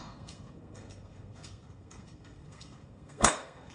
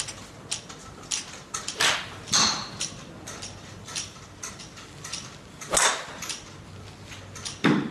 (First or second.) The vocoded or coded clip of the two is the first